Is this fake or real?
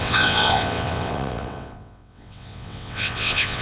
fake